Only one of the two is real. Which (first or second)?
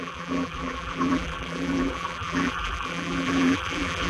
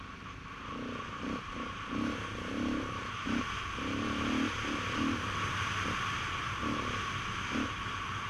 second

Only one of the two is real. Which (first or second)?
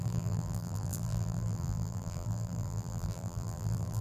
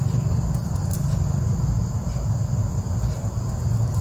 second